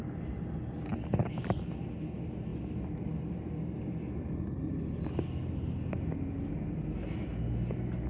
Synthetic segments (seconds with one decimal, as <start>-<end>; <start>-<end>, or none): none